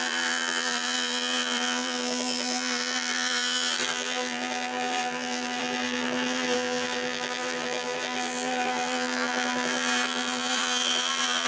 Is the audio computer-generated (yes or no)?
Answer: yes